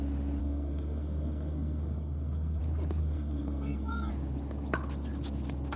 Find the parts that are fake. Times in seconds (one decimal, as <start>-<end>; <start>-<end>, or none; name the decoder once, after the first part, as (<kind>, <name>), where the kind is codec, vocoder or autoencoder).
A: 0.4-2.6 (codec, SNAC); 3.0-4.1